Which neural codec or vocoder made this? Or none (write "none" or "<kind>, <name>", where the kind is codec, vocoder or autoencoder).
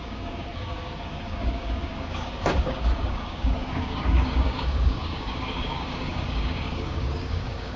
codec, DAC